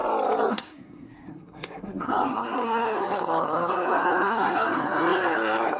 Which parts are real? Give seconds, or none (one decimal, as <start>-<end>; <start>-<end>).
0.0-0.5